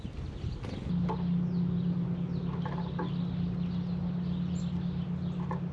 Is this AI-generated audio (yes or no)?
no